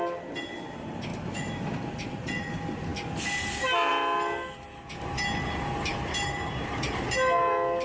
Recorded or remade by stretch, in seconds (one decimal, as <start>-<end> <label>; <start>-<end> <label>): 0.0-1.1 recorded; 1.1-1.8 remade; 1.8-7.8 recorded